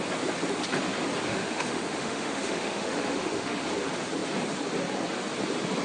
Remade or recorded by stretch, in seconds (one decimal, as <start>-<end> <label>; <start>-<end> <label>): 0.0-1.3 recorded; 1.3-3.6 remade; 3.6-5.8 recorded